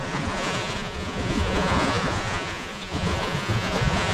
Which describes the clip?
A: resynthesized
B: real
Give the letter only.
A